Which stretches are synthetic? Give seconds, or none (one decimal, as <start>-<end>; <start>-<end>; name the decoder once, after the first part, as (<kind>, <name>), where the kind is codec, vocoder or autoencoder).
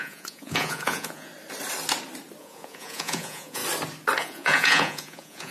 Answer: 0.0-1.3 (vocoder, Vocos); 2.4-3.6; 4.2-5.5